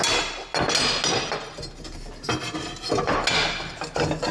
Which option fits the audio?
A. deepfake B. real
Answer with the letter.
B